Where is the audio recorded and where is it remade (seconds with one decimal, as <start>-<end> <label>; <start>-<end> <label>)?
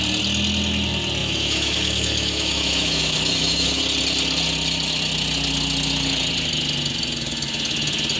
0.0-1.2 recorded; 1.2-3.8 remade; 3.8-8.2 recorded